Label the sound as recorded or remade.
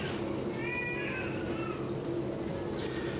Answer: recorded